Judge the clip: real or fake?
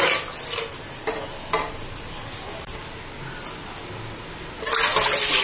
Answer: real